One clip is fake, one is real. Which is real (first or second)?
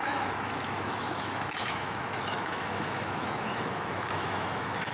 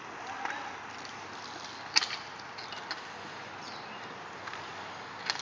second